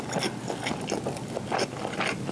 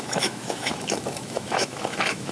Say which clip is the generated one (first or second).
second